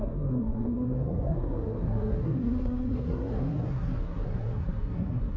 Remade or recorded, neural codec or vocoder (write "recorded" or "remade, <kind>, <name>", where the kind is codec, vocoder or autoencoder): remade, codec, SNAC